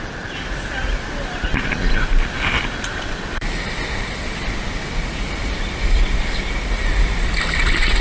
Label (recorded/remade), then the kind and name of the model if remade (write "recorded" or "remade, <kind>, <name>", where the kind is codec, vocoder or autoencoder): recorded